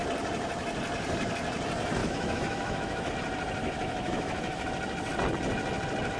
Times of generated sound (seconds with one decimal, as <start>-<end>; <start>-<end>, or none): 2.0-3.1; 3.6-4.7